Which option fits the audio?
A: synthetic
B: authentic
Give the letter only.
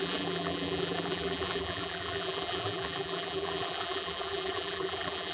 A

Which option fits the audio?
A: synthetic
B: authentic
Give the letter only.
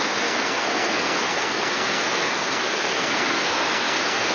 A